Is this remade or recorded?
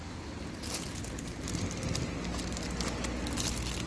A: recorded